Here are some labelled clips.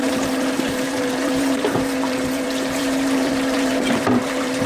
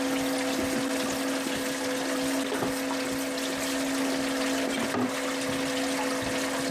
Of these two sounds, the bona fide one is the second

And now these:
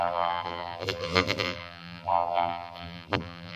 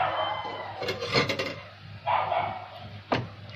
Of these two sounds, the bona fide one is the second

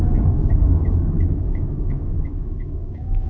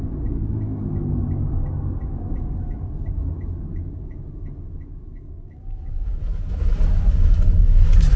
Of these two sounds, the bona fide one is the second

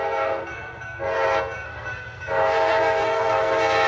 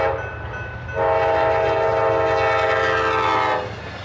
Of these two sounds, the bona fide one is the second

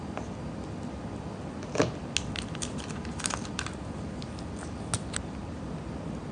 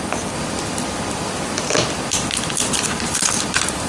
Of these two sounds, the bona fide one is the first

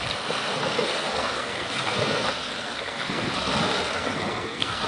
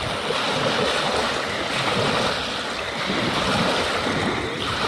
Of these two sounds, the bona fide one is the second